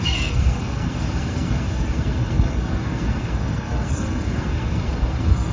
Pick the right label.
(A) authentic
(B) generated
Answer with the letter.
B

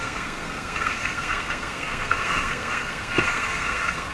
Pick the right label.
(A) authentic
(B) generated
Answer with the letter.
B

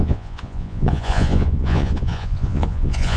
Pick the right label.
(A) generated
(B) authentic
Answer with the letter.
A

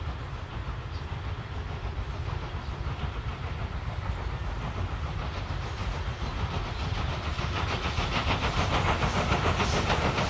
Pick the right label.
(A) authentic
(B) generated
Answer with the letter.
A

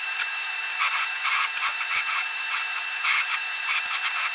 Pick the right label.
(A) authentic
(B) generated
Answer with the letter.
B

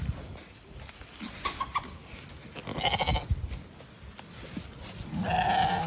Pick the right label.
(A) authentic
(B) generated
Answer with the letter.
A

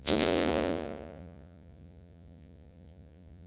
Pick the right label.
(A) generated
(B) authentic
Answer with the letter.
A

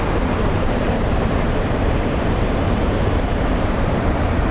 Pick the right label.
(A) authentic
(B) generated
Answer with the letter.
B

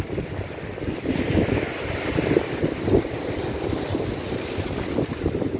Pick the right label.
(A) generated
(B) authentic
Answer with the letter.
B